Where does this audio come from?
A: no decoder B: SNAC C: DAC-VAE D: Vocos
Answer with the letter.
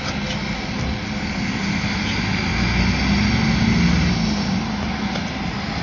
A